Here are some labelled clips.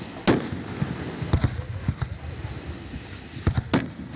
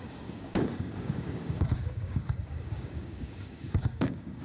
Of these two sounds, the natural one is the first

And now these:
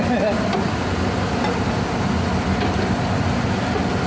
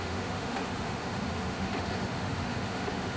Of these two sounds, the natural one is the first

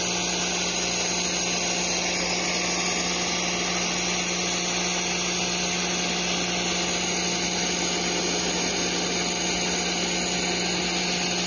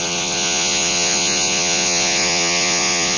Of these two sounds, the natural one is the first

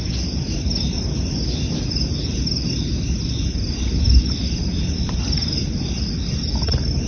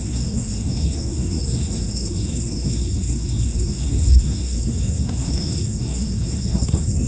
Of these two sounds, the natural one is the first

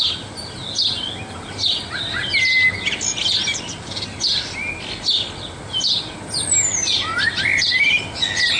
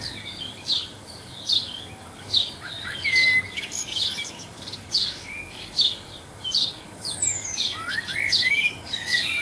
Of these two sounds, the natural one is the first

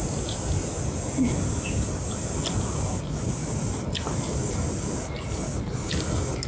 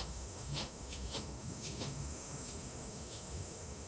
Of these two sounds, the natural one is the first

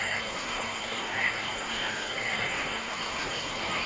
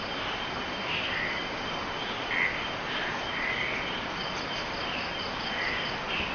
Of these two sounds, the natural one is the second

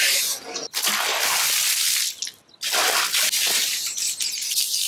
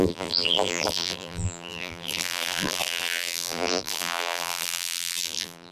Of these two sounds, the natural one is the first